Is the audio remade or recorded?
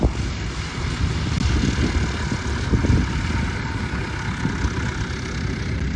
recorded